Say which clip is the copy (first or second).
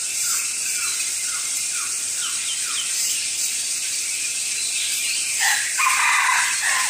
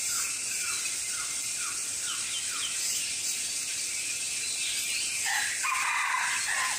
first